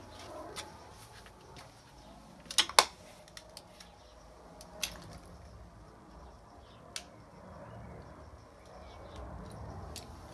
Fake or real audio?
real